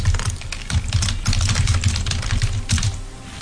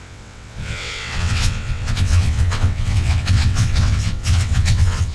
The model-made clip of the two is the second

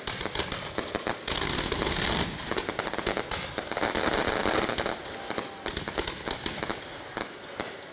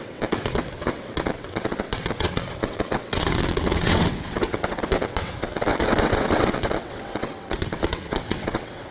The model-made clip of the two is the second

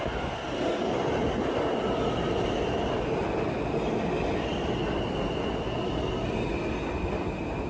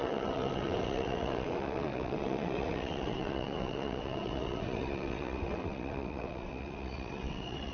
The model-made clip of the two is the second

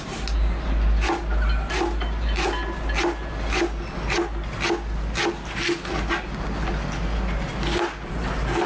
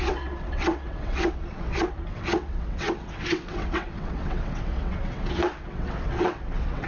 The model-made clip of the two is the second